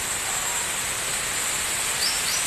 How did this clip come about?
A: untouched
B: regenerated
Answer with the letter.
A